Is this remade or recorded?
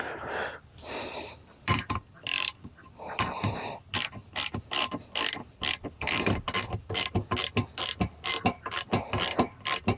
remade